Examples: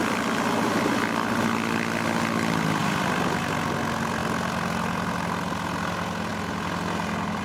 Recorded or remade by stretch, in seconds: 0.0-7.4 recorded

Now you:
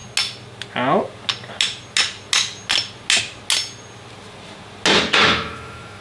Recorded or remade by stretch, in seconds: 0.0-5.2 recorded; 5.2-6.0 remade